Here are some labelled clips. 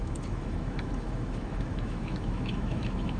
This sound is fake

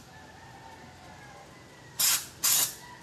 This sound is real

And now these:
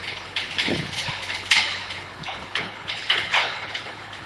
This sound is fake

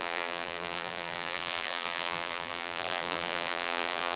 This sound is fake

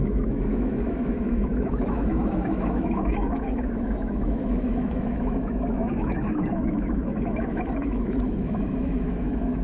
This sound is fake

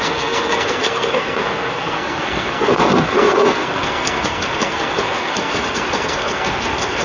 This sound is fake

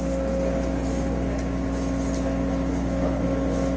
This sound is real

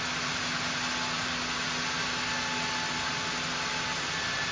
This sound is real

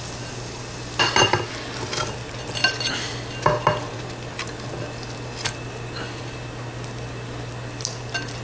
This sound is real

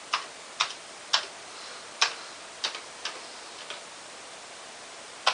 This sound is real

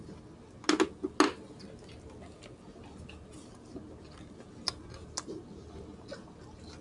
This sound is real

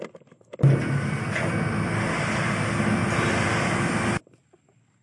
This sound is real